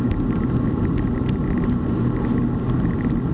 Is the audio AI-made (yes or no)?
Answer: no